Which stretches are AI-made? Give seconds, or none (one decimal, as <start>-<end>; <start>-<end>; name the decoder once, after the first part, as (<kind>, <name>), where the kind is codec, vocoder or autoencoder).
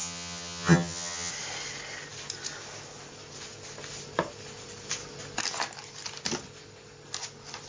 0.0-1.3 (vocoder, HiFi-GAN)